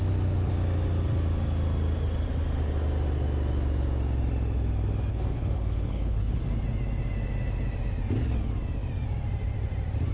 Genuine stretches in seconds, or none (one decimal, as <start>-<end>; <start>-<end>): 0.0-5.1; 6.4-10.1